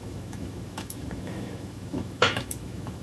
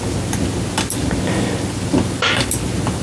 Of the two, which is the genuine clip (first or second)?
second